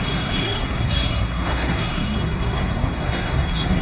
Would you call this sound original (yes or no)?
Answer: no